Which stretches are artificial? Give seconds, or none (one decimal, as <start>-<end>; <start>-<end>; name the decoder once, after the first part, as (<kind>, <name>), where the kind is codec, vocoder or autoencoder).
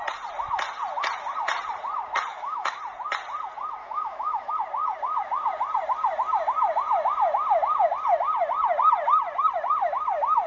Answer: 2.3-2.8 (autoencoder, DAC-VAE); 3.8-4.5